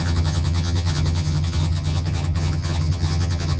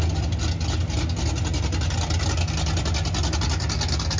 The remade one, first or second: first